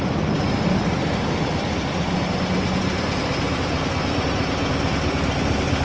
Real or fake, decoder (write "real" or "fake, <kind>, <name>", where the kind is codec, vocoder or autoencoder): real